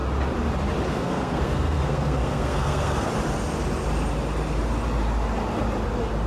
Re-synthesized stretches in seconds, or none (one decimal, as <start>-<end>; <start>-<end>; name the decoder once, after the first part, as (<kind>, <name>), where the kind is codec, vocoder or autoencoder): 0.9-3.1 (codec, SNAC)

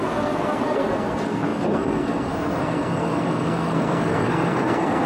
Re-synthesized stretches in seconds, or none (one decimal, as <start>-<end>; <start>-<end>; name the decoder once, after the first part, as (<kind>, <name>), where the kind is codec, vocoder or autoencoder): 0.0-5.1 (codec, SNAC)

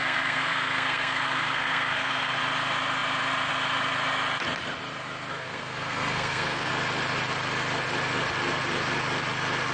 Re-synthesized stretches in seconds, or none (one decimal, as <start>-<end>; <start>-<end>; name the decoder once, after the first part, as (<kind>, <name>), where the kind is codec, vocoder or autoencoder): 0.0-2.4 (codec, SNAC); 5.3-6.7